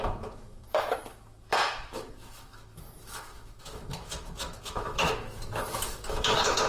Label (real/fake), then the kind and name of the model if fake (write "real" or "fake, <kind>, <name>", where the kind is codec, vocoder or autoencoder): fake, autoencoder, DAC-VAE